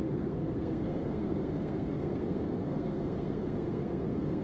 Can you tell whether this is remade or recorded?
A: remade